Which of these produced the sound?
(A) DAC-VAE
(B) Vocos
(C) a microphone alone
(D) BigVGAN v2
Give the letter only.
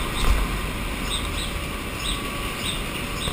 C